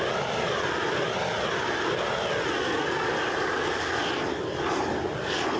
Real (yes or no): yes